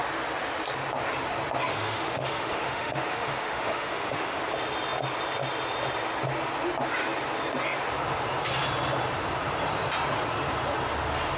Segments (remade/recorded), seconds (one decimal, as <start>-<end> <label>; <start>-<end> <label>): 0.0-1.7 recorded; 1.7-4.4 remade; 4.4-11.4 recorded